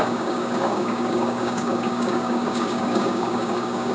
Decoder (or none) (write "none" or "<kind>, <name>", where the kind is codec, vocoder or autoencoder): codec, DAC